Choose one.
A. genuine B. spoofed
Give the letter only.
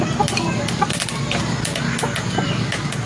A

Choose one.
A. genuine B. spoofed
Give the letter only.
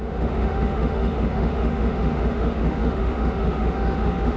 B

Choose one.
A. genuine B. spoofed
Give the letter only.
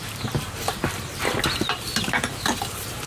A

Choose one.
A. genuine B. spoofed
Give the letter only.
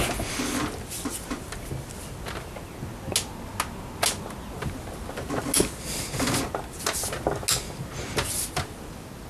A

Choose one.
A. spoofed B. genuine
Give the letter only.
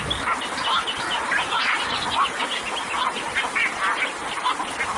B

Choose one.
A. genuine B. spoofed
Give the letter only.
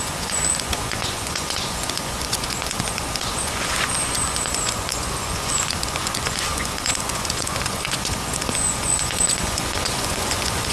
B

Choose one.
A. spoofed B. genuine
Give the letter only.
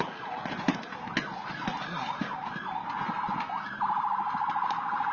B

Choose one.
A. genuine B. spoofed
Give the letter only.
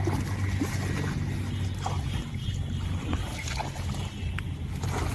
A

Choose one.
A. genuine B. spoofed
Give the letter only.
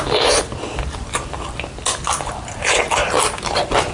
A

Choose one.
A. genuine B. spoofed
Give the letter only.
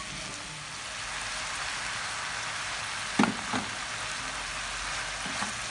A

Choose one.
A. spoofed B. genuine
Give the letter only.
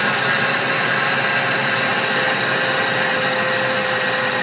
B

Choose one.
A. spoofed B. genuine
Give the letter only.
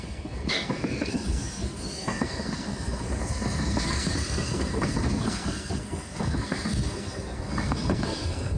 A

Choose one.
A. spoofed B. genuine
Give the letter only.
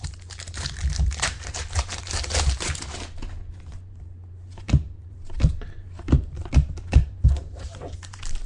A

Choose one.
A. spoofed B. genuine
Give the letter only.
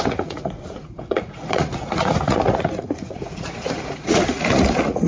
A